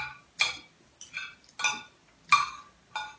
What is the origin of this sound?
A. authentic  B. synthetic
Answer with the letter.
A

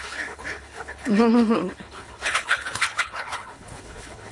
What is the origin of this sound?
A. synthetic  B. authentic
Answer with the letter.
A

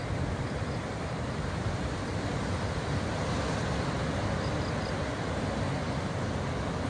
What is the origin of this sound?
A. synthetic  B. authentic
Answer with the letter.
B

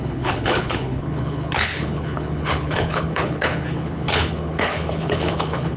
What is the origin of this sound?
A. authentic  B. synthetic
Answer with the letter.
B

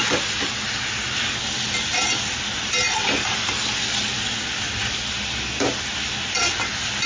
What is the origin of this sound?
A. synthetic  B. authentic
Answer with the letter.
B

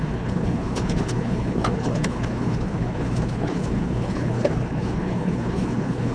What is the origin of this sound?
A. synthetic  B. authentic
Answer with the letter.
A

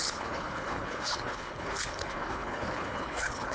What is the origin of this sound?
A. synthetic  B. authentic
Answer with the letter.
A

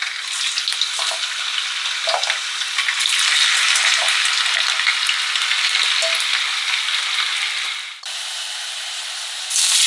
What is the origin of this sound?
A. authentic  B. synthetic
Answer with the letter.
A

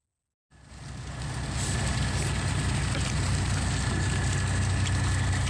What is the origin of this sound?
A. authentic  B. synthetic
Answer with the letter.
A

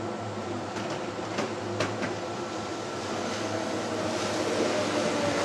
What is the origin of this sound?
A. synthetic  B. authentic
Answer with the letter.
B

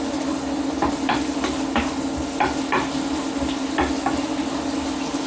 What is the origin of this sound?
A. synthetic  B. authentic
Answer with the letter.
B